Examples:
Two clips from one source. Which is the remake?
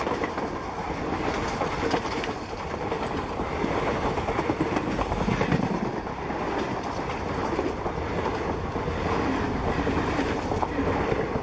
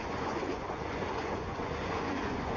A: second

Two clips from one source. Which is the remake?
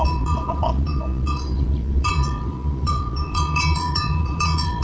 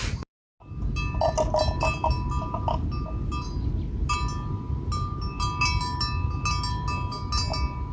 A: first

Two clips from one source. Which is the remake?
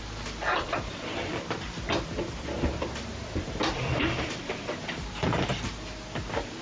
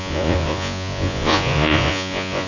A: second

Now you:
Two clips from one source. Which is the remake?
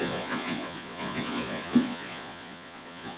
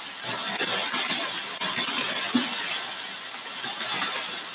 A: first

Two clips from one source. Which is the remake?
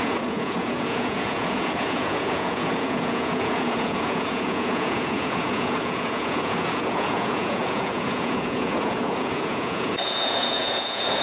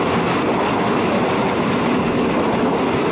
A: first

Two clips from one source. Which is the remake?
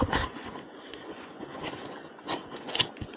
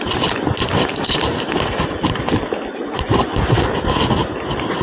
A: first